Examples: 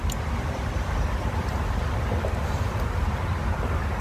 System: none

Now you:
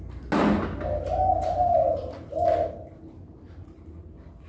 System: none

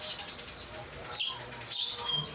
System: none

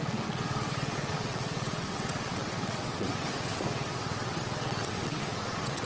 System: vocoder, WaveNeXt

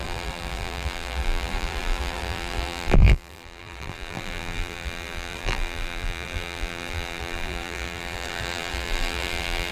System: vocoder, BigVGAN v2